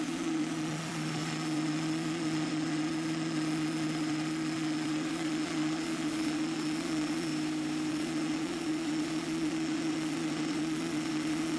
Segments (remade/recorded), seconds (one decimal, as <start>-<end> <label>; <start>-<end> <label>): 0.0-7.3 remade; 7.3-7.9 recorded; 7.9-11.6 remade